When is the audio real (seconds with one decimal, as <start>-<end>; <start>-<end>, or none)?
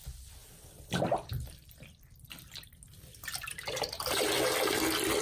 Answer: 0.0-0.4; 2.6-5.2